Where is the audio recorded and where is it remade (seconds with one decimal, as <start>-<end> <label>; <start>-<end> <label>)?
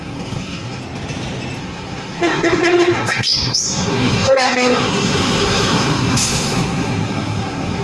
0.0-0.8 remade; 0.8-1.6 recorded; 1.6-7.8 remade